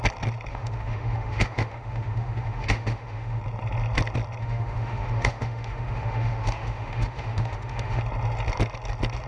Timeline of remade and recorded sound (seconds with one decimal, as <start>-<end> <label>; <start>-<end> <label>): 0.0-0.5 recorded; 0.5-3.4 remade; 3.4-4.4 recorded; 4.4-8.0 remade; 8.0-9.3 recorded